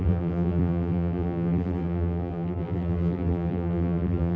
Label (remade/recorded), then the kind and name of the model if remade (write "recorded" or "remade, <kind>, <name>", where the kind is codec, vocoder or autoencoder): remade, vocoder, BigVGAN v2